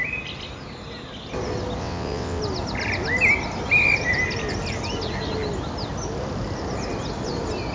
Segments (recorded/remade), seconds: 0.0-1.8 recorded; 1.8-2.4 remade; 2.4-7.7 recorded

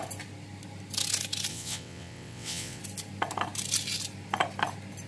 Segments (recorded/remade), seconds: 0.0-1.5 recorded; 1.5-2.8 remade; 2.8-5.1 recorded

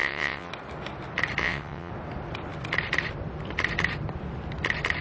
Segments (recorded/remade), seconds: 0.0-0.5 remade; 0.5-1.4 recorded; 1.4-1.9 remade; 1.9-5.0 recorded